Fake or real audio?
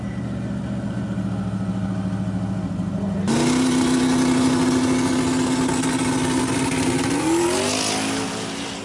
real